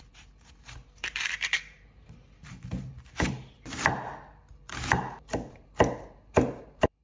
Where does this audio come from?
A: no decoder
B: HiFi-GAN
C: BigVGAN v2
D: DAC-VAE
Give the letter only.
C